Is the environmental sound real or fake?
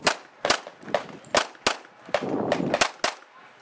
real